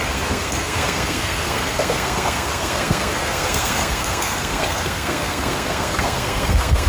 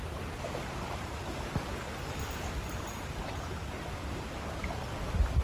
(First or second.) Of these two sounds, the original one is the second